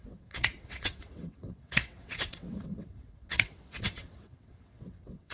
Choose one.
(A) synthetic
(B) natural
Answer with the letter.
A